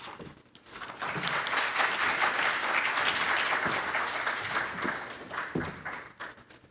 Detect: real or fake real